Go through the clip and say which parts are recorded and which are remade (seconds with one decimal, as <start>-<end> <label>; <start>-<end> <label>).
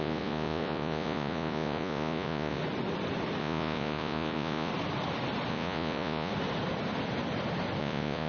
0.0-2.6 remade; 2.6-3.4 recorded; 3.4-4.7 remade; 4.7-5.5 recorded; 5.5-6.3 remade; 6.3-7.8 recorded; 7.8-8.3 remade